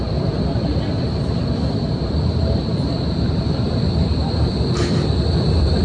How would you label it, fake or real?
fake